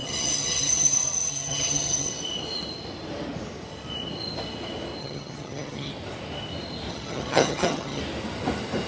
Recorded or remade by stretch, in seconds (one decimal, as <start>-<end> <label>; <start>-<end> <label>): 0.0-2.1 remade; 2.1-5.0 recorded; 5.0-5.9 remade; 5.9-6.9 recorded; 6.9-8.0 remade; 8.0-8.9 recorded